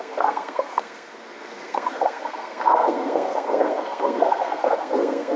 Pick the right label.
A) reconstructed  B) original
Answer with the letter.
A